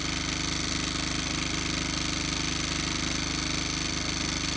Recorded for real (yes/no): yes